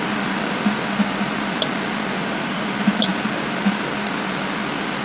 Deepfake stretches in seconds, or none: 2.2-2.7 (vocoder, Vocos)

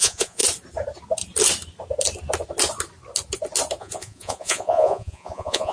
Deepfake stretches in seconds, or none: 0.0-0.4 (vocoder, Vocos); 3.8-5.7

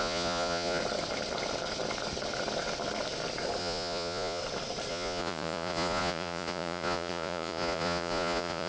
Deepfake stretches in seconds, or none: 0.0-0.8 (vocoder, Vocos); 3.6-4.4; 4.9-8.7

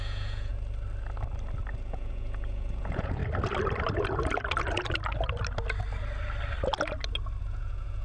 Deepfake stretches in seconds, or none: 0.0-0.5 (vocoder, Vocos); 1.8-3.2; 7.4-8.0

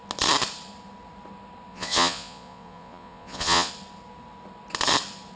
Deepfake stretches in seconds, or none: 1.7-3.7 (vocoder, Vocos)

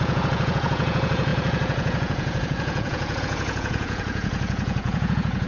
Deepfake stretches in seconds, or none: 0.0-5.5 (vocoder, Vocos)